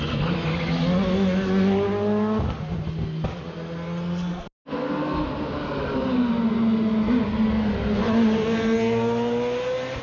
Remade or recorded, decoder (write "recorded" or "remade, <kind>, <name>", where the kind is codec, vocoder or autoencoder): recorded